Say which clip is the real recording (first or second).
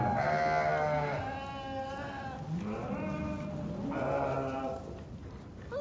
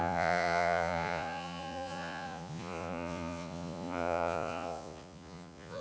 first